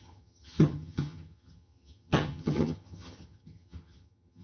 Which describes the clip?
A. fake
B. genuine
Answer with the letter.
A